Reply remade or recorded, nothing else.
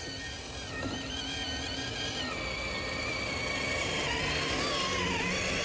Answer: recorded